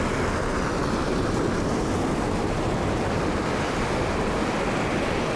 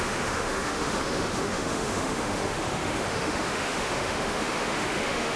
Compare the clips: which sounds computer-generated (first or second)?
second